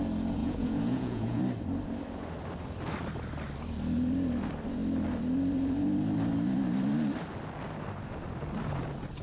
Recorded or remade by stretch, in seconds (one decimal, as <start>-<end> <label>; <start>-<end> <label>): 0.0-0.4 recorded; 0.4-1.4 remade; 1.4-9.2 recorded